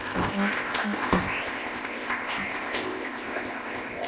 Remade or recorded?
remade